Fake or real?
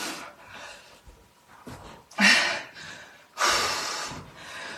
fake